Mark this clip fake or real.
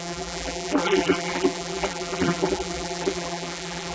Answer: fake